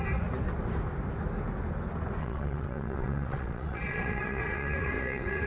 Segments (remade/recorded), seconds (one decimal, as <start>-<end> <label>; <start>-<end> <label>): 0.0-2.2 recorded; 2.2-5.5 remade

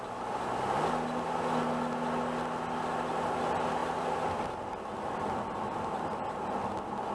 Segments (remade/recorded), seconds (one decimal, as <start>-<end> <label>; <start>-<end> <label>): 0.0-7.1 recorded

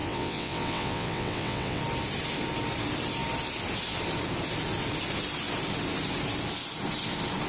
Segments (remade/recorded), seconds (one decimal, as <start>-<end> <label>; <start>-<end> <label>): 0.0-1.8 remade; 1.8-7.5 recorded

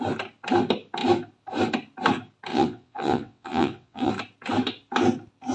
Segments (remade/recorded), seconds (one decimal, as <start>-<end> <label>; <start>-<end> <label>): 0.0-2.5 recorded; 2.5-4.1 remade; 4.1-5.5 recorded

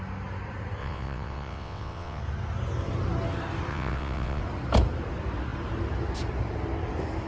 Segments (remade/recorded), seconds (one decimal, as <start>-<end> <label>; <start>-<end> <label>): 0.0-0.8 recorded; 0.8-2.2 remade; 2.2-3.7 recorded; 3.7-4.4 remade; 4.4-7.3 recorded

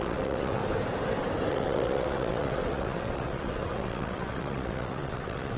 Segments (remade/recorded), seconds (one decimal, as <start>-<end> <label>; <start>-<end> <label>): 0.0-0.6 remade; 0.6-1.5 recorded; 1.5-5.6 remade

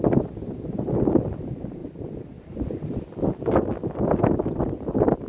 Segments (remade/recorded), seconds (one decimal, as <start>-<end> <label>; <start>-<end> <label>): 0.0-5.3 recorded